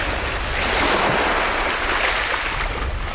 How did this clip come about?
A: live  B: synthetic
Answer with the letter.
A